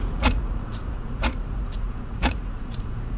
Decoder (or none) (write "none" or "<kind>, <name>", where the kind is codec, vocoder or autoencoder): vocoder, Vocos